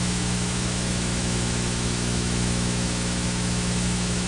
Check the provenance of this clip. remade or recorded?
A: remade